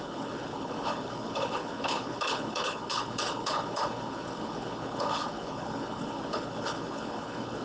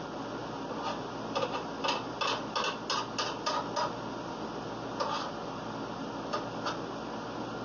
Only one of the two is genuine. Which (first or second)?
second